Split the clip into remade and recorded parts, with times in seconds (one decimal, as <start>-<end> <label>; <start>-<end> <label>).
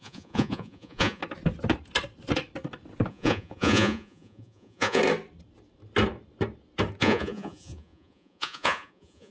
0.0-1.2 remade; 1.2-3.1 recorded; 3.1-5.0 remade; 5.0-7.0 recorded; 7.0-9.3 remade